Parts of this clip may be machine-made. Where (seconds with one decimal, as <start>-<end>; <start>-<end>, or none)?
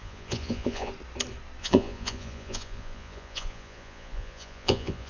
0.0-0.9; 1.6-5.1